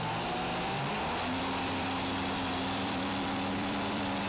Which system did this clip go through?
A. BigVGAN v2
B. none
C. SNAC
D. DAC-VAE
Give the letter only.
A